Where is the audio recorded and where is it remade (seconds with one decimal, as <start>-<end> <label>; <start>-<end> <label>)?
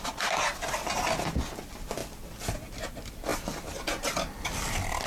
0.0-5.1 recorded